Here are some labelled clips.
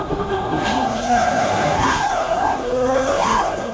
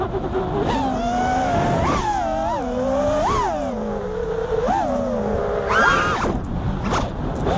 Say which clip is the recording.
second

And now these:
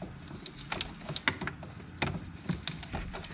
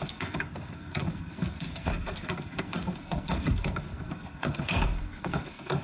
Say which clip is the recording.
first